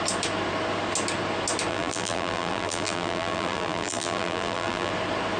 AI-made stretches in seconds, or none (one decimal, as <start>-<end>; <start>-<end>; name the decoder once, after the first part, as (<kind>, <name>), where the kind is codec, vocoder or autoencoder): 1.7-4.9 (vocoder, BigVGAN v2)

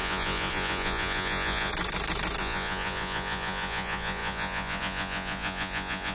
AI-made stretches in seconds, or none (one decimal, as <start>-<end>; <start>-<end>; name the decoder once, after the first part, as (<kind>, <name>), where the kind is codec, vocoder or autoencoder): 0.0-1.7 (vocoder, Vocos); 2.4-6.1

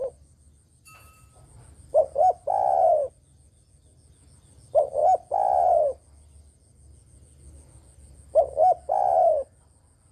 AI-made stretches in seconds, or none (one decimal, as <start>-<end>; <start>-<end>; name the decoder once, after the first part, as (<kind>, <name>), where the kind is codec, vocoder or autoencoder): none

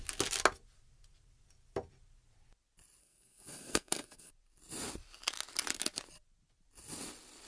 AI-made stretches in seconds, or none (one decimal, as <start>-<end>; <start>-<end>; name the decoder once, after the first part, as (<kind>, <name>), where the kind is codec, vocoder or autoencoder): 3.0-4.3 (codec, SNAC)

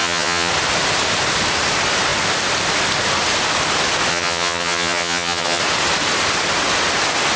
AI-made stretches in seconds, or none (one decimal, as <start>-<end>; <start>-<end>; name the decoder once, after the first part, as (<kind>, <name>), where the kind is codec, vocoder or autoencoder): 0.0-0.5 (vocoder, HiFi-GAN); 4.1-5.6

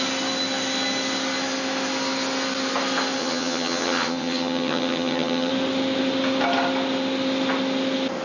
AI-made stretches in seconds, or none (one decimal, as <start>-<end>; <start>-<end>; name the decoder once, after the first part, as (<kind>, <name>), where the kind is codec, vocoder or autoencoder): 3.2-5.5 (vocoder, HiFi-GAN)

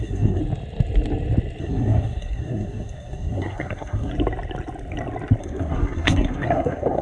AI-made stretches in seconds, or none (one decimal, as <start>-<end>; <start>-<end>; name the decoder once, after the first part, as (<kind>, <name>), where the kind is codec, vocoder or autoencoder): 0.0-0.4 (codec, SNAC); 1.6-4.1; 5.4-7.0